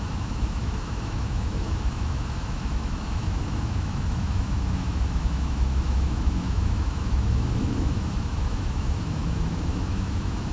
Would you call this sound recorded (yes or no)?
no